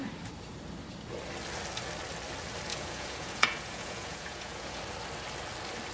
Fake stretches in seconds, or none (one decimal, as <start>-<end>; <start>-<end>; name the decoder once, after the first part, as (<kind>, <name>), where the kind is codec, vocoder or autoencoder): 2.7-4.8 (vocoder, Vocos)